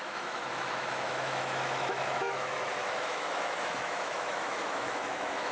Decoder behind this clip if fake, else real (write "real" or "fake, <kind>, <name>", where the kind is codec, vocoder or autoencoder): fake, autoencoder, DAC-VAE